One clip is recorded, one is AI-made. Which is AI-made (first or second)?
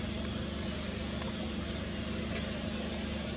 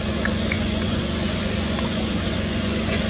second